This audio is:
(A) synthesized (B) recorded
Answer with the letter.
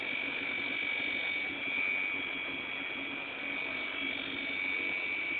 B